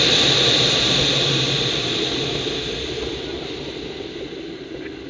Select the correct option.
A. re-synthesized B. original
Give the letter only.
B